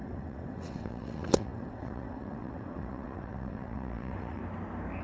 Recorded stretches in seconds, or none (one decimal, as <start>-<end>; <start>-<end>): 4.4-5.0